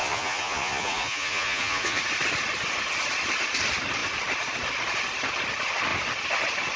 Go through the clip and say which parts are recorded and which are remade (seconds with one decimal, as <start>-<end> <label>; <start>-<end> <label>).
0.0-2.0 remade; 2.0-6.8 recorded